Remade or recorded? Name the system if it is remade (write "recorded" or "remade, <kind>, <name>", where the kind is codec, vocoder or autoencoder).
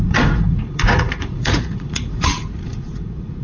remade, vocoder, Vocos